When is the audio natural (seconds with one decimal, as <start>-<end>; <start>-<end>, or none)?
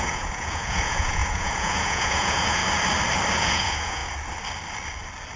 2.6-3.4; 4.0-5.4